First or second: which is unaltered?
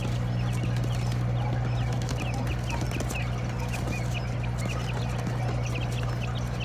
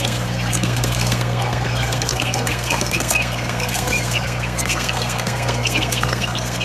first